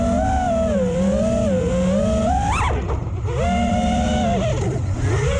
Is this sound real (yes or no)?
yes